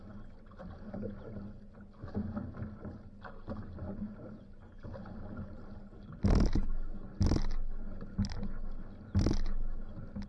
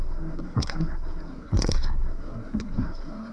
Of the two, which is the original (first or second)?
first